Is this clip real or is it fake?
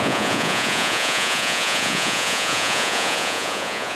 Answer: fake